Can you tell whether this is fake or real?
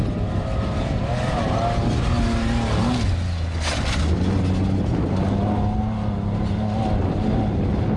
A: real